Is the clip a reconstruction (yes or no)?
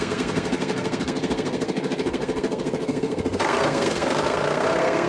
yes